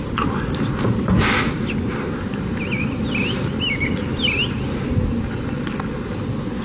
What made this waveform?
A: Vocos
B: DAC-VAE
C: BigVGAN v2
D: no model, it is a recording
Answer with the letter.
D